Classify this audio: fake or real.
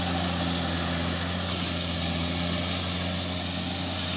real